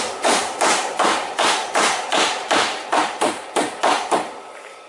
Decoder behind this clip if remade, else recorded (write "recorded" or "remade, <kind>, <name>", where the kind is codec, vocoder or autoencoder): remade, vocoder, BigVGAN v2